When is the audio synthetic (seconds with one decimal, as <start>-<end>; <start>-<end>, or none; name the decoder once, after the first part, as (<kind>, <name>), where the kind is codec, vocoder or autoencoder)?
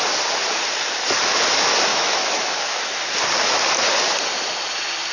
1.9-2.9 (autoencoder, DAC-VAE)